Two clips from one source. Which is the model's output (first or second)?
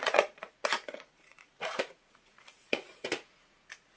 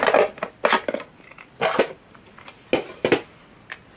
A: first